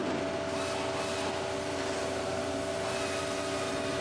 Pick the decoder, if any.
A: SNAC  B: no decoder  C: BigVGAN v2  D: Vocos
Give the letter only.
B